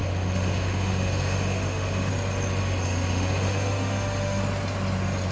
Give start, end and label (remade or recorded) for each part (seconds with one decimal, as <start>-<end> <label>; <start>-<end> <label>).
0.0-2.1 remade; 2.1-2.6 recorded; 2.6-4.4 remade; 4.4-5.3 recorded